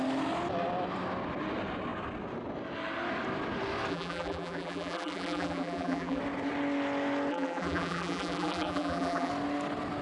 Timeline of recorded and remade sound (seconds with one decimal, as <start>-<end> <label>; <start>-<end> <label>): 0.0-3.9 recorded; 3.9-6.2 remade; 6.2-7.3 recorded; 7.3-9.3 remade; 9.3-10.0 recorded